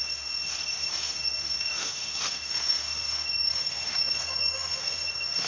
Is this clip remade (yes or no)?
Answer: yes